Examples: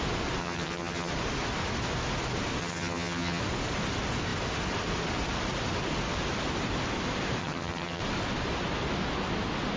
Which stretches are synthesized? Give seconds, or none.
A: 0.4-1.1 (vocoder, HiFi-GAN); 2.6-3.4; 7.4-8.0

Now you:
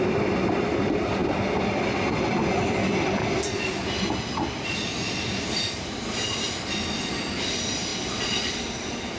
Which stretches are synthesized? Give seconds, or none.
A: none